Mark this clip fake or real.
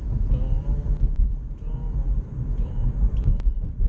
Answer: fake